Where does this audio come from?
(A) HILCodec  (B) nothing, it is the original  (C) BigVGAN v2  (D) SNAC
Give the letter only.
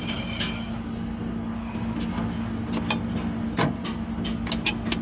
B